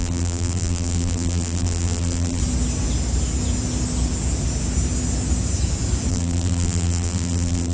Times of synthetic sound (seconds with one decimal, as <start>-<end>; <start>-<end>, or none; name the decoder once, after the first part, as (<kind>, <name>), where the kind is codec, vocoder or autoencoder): 0.0-2.4 (vocoder, BigVGAN v2); 6.1-7.7